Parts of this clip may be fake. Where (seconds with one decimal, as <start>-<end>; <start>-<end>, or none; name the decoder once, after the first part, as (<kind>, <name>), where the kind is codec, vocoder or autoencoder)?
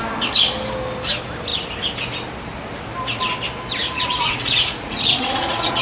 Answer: 3.8-5.8 (vocoder, Vocos)